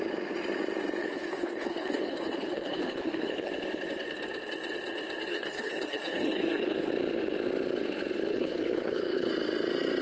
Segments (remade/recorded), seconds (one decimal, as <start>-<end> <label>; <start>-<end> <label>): 0.0-1.0 recorded; 1.0-3.5 remade; 3.5-5.3 recorded; 5.3-6.9 remade; 6.9-8.3 recorded; 8.3-9.3 remade; 9.3-10.0 recorded